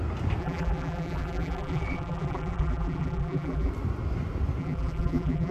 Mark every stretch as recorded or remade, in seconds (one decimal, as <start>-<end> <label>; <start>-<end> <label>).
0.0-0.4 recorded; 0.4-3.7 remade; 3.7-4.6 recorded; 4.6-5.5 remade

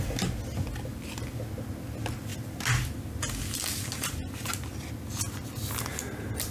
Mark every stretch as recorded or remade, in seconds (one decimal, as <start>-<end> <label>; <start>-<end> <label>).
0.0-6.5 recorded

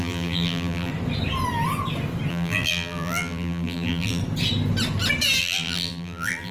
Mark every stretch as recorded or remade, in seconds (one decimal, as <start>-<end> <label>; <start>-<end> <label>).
0.0-0.9 remade; 0.9-2.3 recorded; 2.3-4.2 remade; 4.2-5.4 recorded; 5.4-6.5 remade